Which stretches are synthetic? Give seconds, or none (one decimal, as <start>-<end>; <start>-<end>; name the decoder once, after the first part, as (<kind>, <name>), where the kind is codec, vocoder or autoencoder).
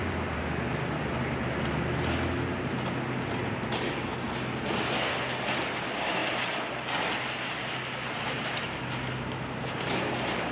0.0-1.1 (vocoder, BigVGAN v2)